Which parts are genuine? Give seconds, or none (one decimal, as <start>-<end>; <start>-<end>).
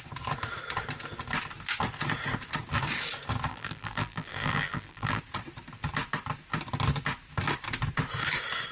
0.0-3.5; 5.2-8.7